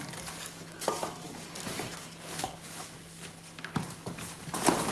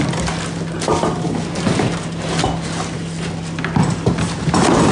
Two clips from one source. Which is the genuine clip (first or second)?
second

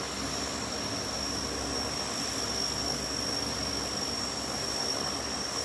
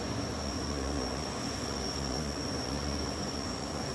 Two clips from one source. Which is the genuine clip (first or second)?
first